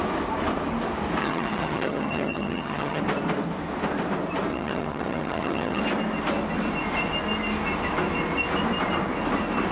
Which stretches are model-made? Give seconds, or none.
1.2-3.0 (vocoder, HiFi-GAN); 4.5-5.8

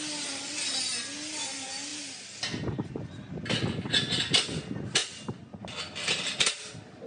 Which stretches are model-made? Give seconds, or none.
none

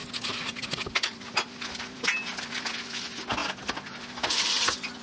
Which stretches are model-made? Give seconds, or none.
none

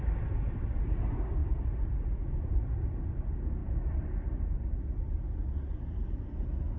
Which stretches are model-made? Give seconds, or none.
none

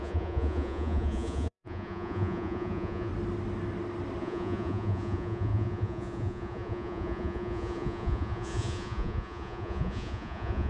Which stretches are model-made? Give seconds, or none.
0.0-3.1 (vocoder, Vocos); 4.2-10.7

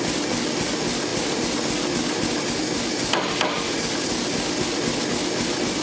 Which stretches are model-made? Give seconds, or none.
none